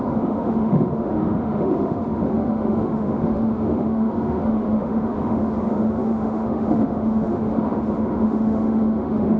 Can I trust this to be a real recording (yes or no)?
no